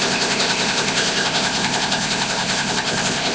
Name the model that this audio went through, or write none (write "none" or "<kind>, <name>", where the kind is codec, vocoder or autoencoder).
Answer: codec, ZipCodec